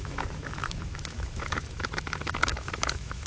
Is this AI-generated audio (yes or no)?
yes